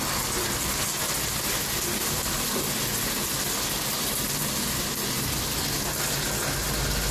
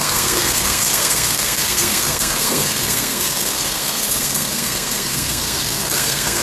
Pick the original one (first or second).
first